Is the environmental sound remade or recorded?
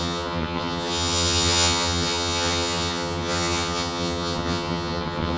remade